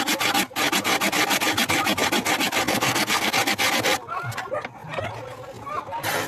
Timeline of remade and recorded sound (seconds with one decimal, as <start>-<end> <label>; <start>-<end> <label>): 0.0-2.7 recorded; 2.7-3.3 remade; 3.3-6.3 recorded

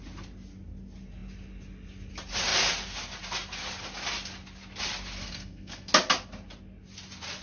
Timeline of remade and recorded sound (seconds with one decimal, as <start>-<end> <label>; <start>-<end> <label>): 0.0-5.2 recorded; 5.2-5.9 remade; 5.9-7.4 recorded